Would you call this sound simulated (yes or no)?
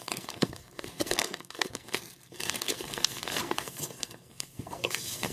yes